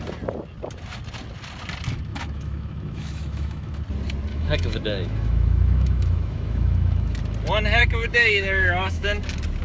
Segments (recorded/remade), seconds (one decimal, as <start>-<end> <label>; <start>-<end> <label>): 0.0-2.1 recorded; 2.1-3.8 remade; 3.8-4.3 recorded; 4.3-7.2 remade; 7.2-7.8 recorded; 7.8-9.2 remade; 9.2-9.6 recorded